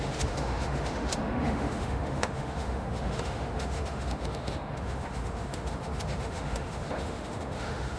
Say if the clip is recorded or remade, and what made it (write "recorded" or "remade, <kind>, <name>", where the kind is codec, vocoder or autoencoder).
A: remade, autoencoder, DAC-VAE